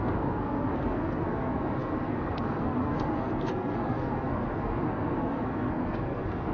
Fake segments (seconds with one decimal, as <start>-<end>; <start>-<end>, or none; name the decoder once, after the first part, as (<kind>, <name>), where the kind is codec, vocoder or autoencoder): 0.0-6.5 (codec, SNAC)